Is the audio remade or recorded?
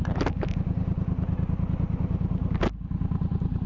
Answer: recorded